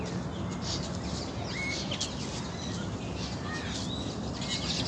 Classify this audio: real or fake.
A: real